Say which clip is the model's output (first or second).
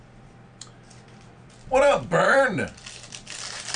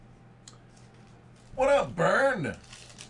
first